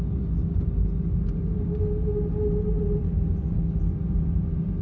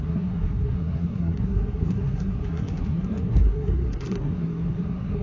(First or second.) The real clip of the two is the first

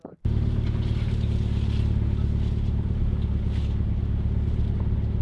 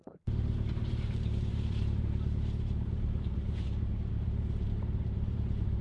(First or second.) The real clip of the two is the first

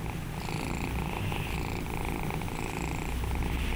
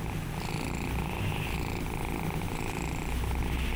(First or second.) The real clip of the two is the second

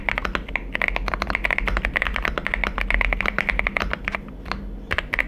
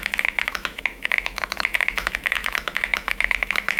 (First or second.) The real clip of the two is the first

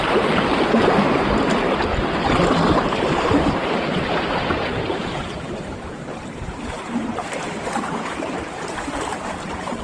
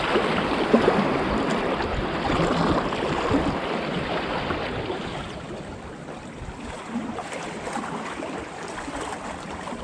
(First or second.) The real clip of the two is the second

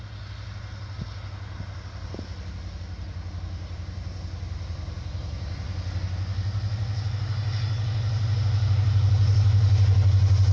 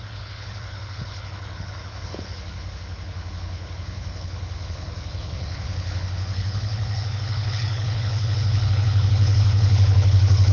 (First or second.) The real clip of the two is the first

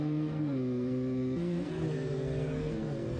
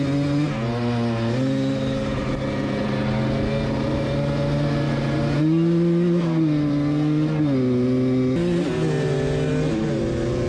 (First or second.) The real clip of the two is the second